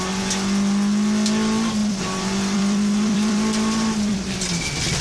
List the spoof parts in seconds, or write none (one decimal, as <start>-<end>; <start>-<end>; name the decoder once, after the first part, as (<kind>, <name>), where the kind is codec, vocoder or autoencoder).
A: 1.8-5.0 (vocoder, BigVGAN v2)